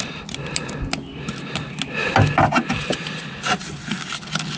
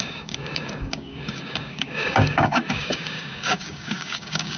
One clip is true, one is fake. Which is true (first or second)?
first